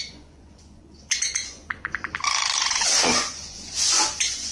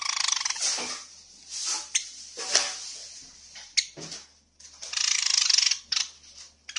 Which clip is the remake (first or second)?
first